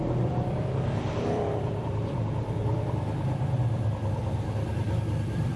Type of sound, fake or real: fake